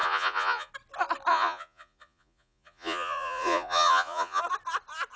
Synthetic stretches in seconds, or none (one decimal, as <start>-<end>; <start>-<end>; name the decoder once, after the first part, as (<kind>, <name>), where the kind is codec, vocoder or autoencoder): 0.0-0.7 (vocoder, Vocos); 1.3-4.4